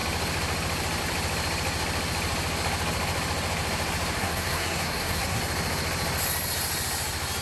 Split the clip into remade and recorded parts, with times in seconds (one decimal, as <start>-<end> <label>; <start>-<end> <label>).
0.0-4.2 recorded; 4.2-5.4 remade; 5.4-7.4 recorded